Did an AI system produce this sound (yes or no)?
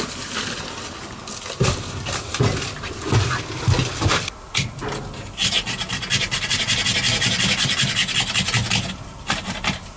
no